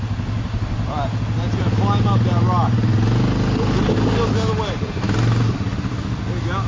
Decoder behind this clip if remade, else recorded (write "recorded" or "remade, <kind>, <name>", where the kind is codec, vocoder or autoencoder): recorded